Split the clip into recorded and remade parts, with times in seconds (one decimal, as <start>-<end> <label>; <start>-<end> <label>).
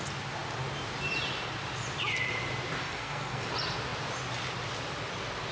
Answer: 0.0-2.8 recorded; 2.8-3.5 remade; 3.5-5.5 recorded